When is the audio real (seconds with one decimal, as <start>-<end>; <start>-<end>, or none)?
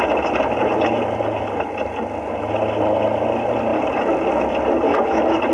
0.0-3.7; 4.8-5.5